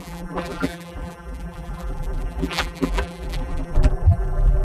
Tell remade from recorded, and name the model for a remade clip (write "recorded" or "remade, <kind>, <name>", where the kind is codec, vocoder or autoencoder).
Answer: remade, vocoder, BigVGAN v2